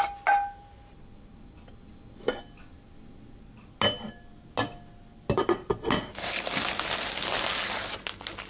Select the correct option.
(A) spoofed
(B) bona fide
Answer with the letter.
B